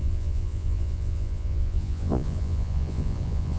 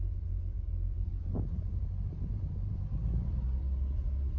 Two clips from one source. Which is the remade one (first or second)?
first